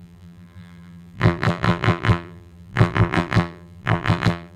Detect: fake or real fake